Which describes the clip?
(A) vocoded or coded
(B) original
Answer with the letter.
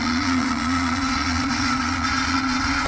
A